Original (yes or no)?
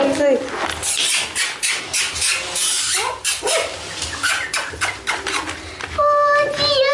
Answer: yes